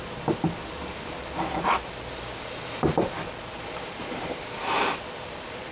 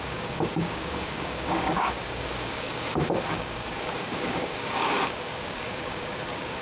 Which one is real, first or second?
first